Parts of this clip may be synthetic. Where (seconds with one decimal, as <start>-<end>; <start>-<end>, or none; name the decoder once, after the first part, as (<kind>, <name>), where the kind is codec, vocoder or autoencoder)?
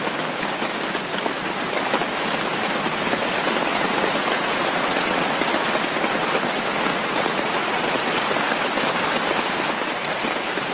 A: 3.7-5.4 (vocoder, Vocos); 6.9-8.0